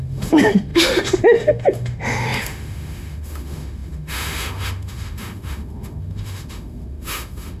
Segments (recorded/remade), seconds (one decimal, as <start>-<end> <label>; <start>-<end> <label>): 0.0-7.6 remade